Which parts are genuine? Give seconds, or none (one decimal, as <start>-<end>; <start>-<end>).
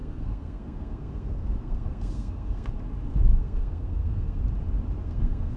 2.7-3.3; 4.4-5.0